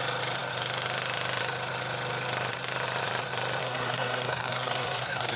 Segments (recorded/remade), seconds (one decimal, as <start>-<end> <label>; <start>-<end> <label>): 0.0-3.6 recorded; 3.6-5.4 remade